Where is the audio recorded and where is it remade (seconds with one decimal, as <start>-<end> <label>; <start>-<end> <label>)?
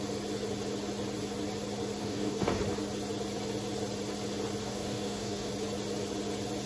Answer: 0.0-2.0 recorded; 2.0-2.6 remade; 2.6-4.6 recorded; 4.6-5.5 remade; 5.5-6.7 recorded